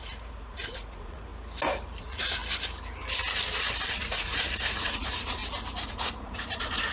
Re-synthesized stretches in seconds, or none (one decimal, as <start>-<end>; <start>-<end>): 0.0-1.3; 2.0-2.4; 3.9-5.4; 5.9-6.9